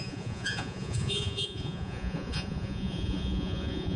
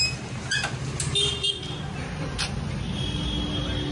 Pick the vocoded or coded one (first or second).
first